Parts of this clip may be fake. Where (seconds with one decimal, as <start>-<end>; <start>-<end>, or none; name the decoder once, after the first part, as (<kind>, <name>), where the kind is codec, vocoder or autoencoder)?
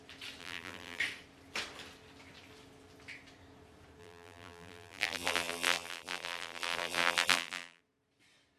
0.4-1.0 (vocoder, BigVGAN v2); 4.0-7.8